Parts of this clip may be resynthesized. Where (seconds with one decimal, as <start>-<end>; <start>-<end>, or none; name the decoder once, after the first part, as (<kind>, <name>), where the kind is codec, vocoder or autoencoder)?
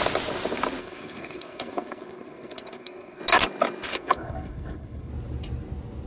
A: 0.8-3.2 (codec, SNAC); 3.9-5.1